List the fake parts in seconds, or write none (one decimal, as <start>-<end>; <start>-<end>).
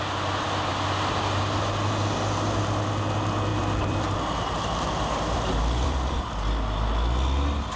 3.5-6.2